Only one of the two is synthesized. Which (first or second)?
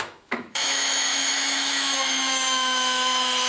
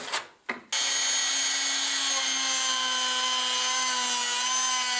first